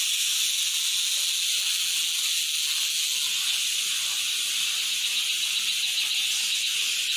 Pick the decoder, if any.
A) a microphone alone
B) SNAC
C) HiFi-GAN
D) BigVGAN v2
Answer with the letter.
A